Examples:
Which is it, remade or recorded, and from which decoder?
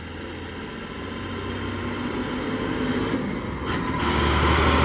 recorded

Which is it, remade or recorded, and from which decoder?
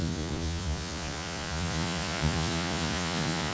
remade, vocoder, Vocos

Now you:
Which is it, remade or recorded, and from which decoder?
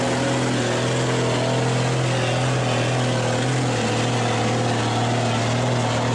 recorded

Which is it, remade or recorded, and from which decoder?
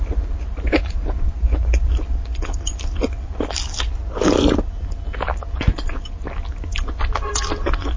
recorded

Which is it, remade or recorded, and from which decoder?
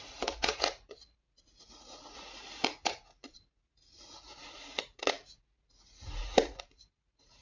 remade, vocoder, Vocos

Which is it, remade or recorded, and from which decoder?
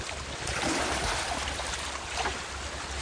recorded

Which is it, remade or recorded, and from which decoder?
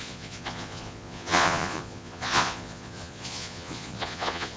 remade, vocoder, Vocos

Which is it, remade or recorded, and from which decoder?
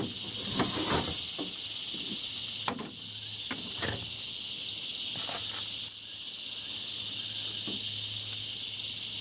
recorded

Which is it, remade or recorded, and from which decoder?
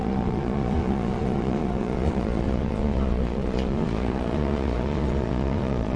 remade, vocoder, Vocos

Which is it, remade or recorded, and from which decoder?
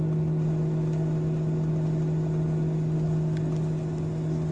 recorded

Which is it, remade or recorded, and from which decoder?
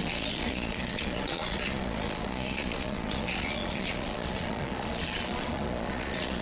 remade, vocoder, Vocos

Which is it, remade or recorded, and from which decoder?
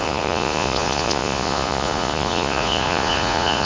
remade, vocoder, Vocos